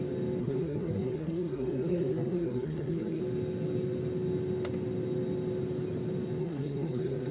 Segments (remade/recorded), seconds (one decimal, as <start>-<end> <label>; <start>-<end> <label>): 0.0-0.4 recorded; 0.4-3.2 remade; 3.2-6.4 recorded; 6.4-7.3 remade